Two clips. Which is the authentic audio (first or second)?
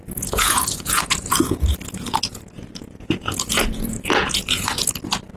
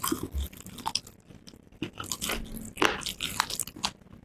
second